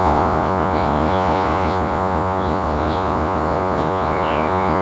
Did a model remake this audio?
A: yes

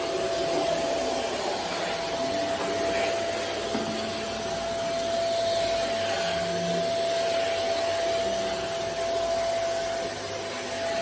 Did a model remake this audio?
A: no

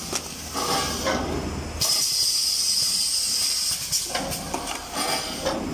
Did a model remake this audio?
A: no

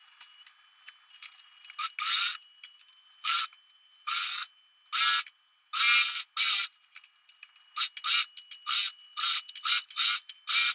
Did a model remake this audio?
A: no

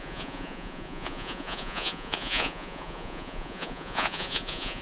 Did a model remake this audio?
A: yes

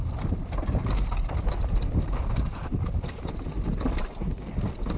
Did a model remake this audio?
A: no